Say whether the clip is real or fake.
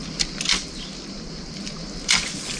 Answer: real